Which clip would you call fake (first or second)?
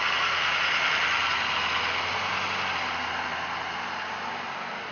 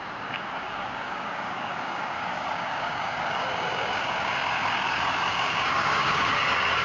second